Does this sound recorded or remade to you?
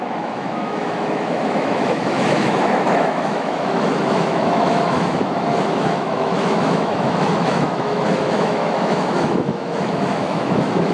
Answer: remade